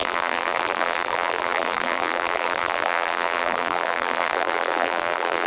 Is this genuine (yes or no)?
no